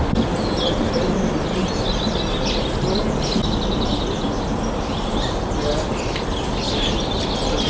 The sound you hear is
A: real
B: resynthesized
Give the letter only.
A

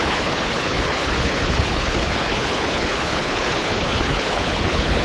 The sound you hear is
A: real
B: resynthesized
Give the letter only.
B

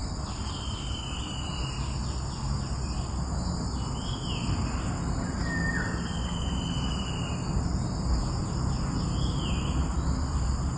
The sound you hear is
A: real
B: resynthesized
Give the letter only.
A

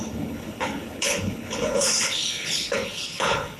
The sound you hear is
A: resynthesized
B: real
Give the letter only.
A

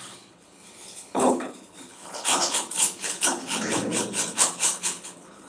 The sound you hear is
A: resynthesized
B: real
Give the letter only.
A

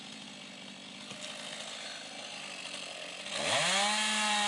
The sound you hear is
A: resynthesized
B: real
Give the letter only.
B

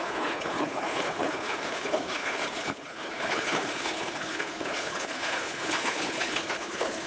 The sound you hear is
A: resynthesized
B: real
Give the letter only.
A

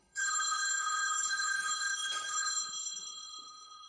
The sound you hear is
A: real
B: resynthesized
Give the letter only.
B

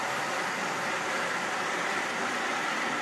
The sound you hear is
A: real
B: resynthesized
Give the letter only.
A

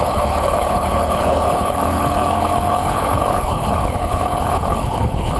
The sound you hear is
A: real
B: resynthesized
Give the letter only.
B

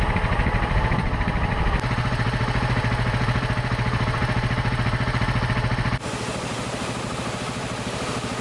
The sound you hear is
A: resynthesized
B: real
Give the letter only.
B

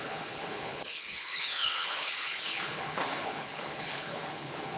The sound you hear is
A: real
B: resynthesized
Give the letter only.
B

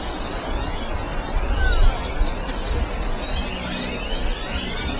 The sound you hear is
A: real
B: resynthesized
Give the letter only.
A